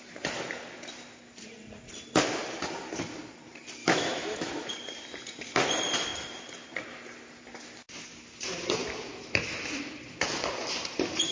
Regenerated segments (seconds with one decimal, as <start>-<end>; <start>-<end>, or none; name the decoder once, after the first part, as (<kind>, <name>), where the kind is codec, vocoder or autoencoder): 3.8-4.7 (autoencoder, DAC-VAE); 9.1-9.8